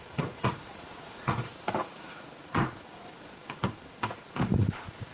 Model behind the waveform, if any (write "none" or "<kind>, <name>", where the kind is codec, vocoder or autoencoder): vocoder, Vocos